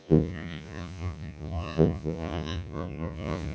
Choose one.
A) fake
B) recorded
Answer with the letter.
A